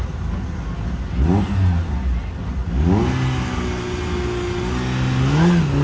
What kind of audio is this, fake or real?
real